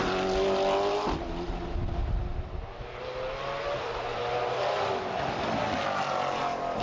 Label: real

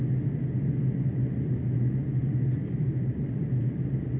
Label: real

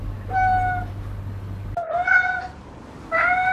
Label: real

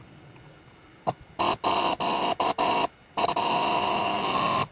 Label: real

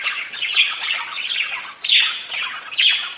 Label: fake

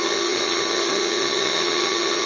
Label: fake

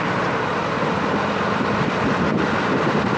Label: fake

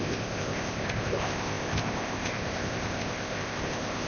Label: fake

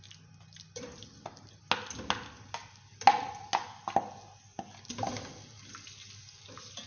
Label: real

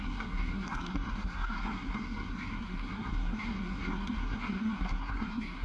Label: fake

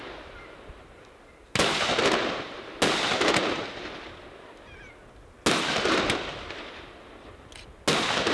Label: real